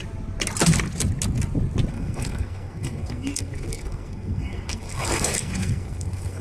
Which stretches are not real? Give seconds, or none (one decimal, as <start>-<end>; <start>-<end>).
1.9-6.4

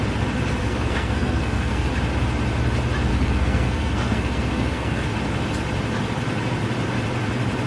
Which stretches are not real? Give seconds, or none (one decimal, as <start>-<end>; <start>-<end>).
0.6-1.9; 3.1-5.1